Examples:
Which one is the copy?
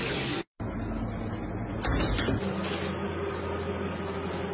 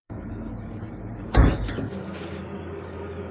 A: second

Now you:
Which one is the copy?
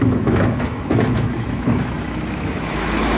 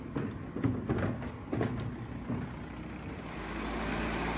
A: first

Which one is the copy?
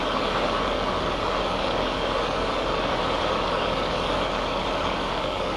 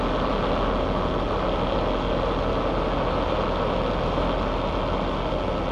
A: first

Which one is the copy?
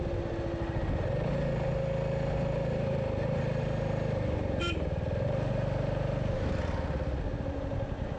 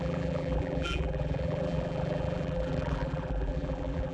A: second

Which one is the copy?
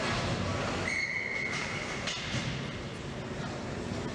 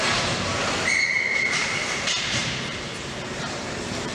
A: second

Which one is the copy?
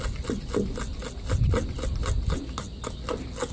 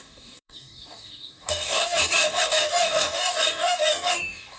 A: second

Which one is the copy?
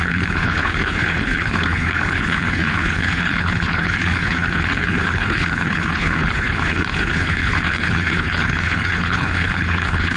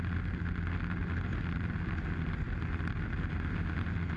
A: first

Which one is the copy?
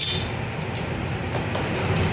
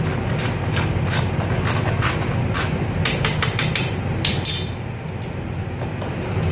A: first